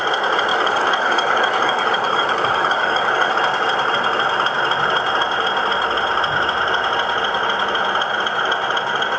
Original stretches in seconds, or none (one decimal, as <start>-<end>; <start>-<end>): 0.0-0.5; 3.3-9.2